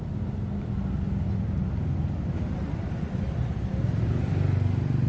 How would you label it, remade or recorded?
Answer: recorded